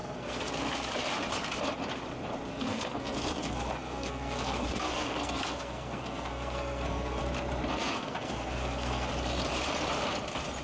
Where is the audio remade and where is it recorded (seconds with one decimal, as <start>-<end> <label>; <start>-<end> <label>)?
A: 0.0-0.5 remade; 0.5-2.5 recorded; 2.5-7.2 remade; 7.2-7.7 recorded; 7.7-9.1 remade; 9.1-10.6 recorded